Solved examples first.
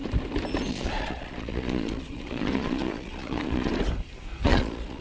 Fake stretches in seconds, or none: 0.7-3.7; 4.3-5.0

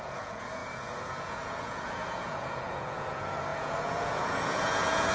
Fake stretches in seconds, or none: 0.0-5.1

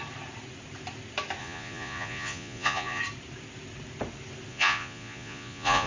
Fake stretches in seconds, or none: 1.4-3.0; 4.5-5.9